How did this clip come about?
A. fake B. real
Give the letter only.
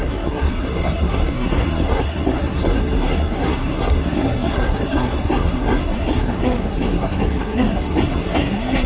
A